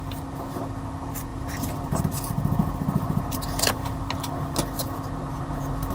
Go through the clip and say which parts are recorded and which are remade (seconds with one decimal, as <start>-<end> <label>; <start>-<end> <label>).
0.0-1.3 recorded; 1.3-2.0 remade; 2.0-2.6 recorded; 2.6-4.1 remade; 4.1-5.9 recorded